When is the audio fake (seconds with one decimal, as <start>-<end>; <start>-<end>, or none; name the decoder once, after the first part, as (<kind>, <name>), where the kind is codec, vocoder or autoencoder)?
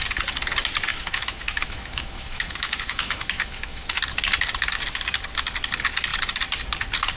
0.9-4.0 (autoencoder, DAC-VAE)